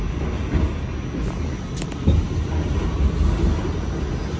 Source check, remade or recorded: recorded